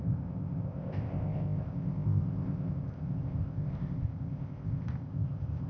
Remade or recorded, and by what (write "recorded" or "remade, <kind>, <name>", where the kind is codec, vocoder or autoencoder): remade, codec, ZipCodec